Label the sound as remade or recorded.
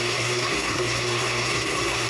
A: remade